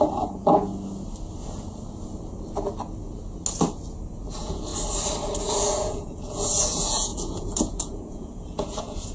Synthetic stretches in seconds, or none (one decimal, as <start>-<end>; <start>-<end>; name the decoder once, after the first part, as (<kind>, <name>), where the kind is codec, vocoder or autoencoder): 0.0-0.7 (vocoder, Vocos); 4.3-4.7; 5.4-9.1